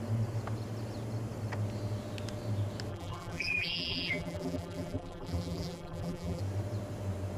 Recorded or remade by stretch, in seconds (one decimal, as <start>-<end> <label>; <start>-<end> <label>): 0.0-2.9 recorded; 2.9-6.4 remade; 6.4-7.4 recorded